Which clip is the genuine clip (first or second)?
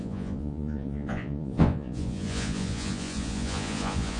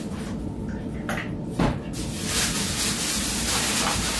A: second